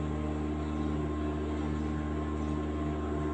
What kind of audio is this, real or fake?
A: real